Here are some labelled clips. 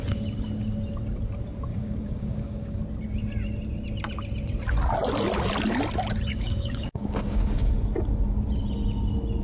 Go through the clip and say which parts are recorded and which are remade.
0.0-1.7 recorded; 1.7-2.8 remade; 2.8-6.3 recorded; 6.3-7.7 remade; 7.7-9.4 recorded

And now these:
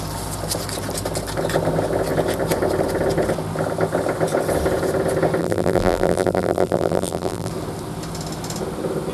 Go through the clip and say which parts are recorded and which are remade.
0.0-5.4 recorded; 5.4-7.5 remade; 7.5-9.1 recorded

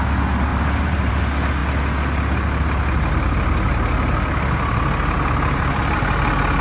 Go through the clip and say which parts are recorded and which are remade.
0.0-0.5 recorded; 0.5-1.1 remade; 1.1-6.6 recorded

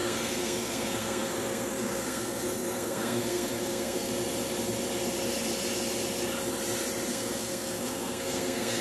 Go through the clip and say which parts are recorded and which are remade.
0.0-4.1 remade; 4.1-7.1 recorded; 7.1-8.8 remade

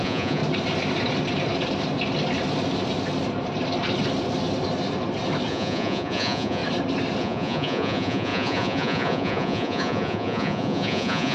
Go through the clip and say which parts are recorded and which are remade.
0.0-0.4 remade; 0.4-5.5 recorded; 5.5-6.6 remade; 6.6-7.2 recorded; 7.2-11.3 remade

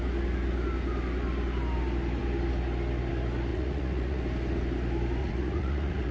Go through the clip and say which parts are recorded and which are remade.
0.0-3.5 recorded; 3.5-4.2 remade; 4.2-5.2 recorded; 5.2-6.1 remade